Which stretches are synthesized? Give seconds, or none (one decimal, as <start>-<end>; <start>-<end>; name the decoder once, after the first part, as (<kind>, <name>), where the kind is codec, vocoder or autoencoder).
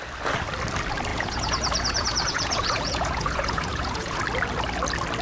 1.1-4.2 (vocoder, Vocos)